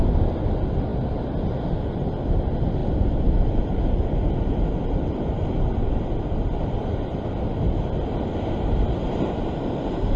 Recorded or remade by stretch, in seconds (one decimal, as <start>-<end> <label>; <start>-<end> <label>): 0.0-0.9 recorded; 0.9-2.2 remade; 2.2-2.8 recorded; 2.8-7.6 remade; 7.6-10.2 recorded